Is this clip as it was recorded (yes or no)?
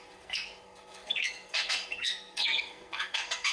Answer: no